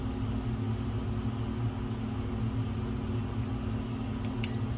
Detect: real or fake real